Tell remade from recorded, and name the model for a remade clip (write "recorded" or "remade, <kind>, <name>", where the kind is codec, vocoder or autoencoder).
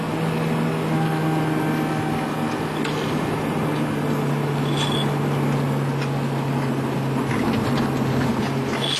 recorded